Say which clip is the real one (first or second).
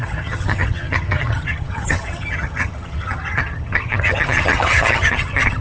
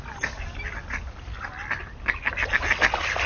second